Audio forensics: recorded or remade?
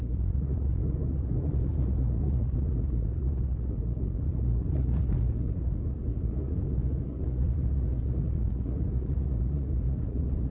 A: remade